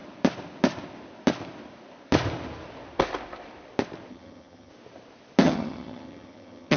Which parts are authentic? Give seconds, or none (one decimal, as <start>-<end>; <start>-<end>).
0.0-4.1; 4.7-5.4